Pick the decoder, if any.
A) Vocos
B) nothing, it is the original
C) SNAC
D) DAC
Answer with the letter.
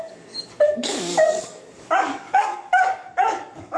D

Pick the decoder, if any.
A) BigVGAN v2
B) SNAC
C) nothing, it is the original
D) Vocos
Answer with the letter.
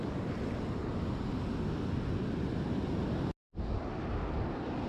C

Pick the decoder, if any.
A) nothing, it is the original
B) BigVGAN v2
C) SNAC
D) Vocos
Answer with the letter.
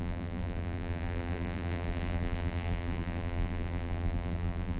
B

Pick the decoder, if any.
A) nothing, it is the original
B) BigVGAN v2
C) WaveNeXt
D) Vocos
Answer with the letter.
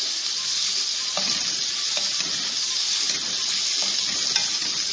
A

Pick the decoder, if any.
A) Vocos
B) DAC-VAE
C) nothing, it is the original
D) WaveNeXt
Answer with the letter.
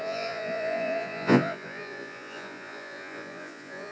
A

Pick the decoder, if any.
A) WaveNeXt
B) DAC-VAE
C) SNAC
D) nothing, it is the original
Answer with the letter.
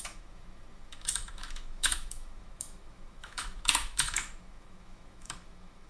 B